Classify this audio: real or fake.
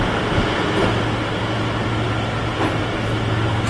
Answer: real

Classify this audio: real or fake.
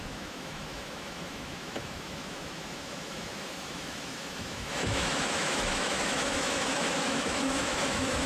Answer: fake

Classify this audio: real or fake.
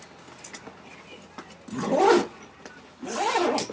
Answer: real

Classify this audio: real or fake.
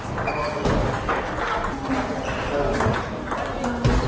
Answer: real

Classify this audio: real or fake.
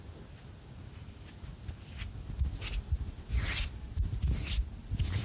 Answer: real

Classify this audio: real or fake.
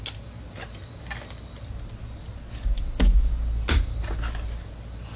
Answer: real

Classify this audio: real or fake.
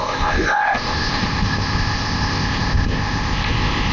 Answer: fake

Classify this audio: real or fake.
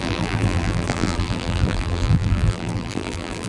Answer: fake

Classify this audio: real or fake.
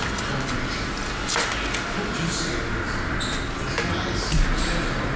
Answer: real